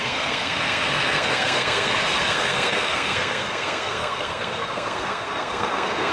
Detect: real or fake fake